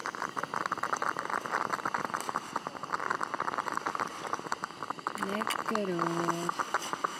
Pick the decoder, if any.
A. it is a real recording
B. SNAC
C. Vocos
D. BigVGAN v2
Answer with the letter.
A